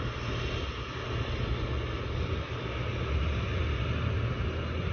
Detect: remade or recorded recorded